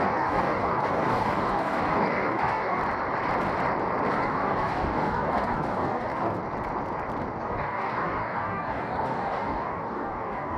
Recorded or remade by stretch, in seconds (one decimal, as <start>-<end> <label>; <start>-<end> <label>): 0.0-2.8 remade; 2.8-4.1 recorded; 4.1-6.4 remade; 6.4-7.4 recorded; 7.4-10.6 remade